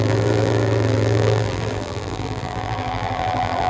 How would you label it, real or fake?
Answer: fake